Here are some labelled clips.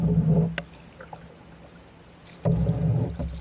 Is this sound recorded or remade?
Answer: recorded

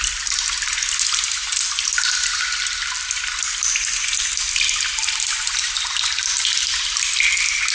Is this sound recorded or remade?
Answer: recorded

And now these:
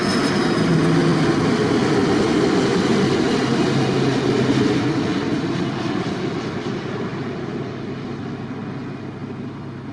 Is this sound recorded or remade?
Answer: recorded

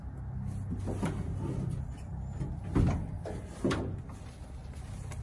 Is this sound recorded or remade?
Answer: recorded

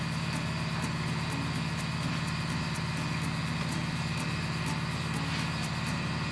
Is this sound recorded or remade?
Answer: recorded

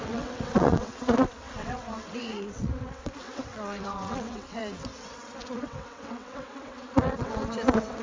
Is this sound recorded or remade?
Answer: remade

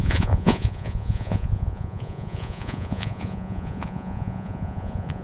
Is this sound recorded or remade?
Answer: remade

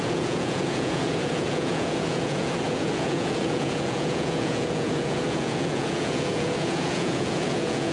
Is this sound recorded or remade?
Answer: remade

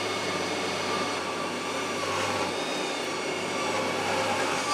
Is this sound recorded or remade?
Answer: remade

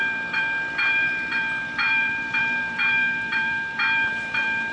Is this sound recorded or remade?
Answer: remade